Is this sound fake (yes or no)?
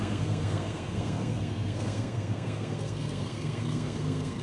yes